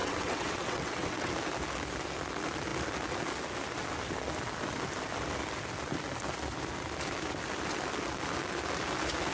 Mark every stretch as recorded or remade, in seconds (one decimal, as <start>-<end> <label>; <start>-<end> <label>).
0.0-1.3 remade; 1.3-9.3 recorded